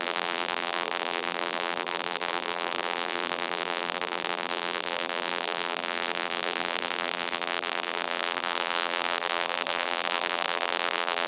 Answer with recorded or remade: remade